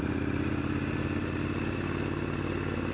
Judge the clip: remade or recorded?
recorded